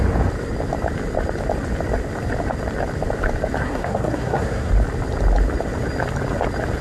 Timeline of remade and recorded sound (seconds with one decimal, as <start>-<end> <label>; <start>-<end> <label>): 0.0-3.6 recorded; 3.6-4.7 remade; 4.7-6.8 recorded